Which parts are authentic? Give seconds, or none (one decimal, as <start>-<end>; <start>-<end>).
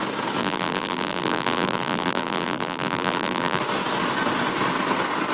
0.0-0.4; 3.6-5.3